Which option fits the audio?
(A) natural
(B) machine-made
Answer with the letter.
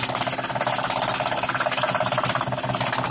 A